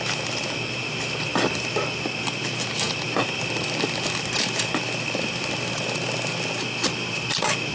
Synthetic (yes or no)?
no